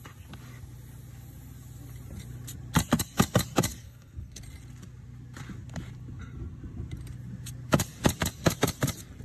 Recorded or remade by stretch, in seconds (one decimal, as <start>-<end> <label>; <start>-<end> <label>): 0.0-3.8 recorded; 3.8-4.4 remade; 4.4-9.2 recorded